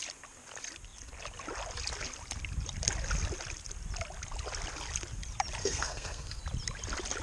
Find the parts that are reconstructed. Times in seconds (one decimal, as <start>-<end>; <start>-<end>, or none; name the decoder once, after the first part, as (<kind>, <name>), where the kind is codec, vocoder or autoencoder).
5.6-6.4 (codec, SNAC)